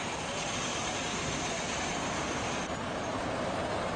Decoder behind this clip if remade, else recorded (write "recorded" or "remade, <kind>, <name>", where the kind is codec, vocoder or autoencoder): remade, vocoder, BigVGAN v2